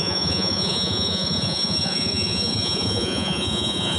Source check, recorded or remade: remade